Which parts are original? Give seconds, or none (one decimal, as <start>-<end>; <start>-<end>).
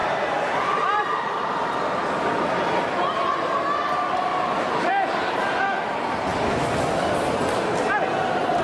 3.5-4.3; 4.9-6.3; 7.3-8.6